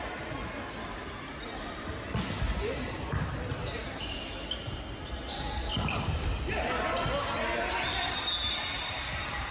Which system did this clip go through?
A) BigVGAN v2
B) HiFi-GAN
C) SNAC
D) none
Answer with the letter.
D